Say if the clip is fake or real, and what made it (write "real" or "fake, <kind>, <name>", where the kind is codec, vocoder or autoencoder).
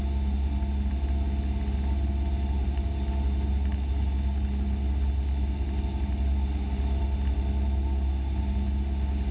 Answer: real